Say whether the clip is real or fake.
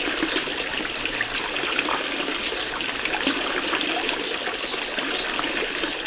real